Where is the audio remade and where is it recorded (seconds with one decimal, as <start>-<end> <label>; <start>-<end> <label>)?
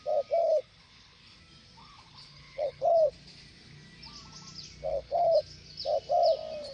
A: 0.0-0.4 recorded; 0.4-1.4 remade; 1.4-1.8 recorded; 1.8-3.1 remade; 3.1-4.9 recorded; 4.9-5.4 remade; 5.4-6.7 recorded